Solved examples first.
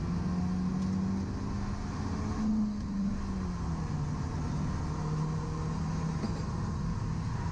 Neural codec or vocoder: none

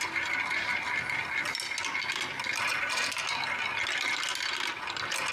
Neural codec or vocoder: none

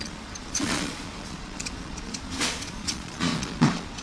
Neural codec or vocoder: vocoder, Vocos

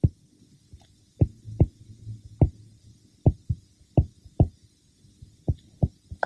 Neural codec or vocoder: none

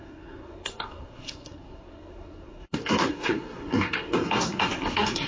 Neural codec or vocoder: codec, SNAC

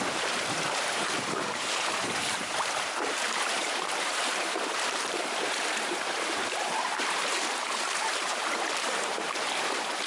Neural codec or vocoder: vocoder, BigVGAN v2